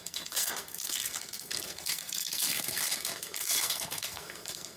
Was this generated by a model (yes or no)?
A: yes